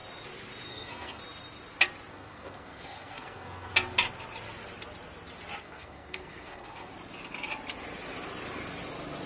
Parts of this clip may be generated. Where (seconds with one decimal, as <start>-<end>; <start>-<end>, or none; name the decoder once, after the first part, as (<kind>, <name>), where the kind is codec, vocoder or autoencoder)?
0.7-1.2 (codec, SNAC); 2.1-3.7; 5.6-6.9